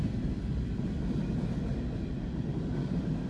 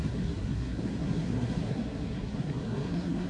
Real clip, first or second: first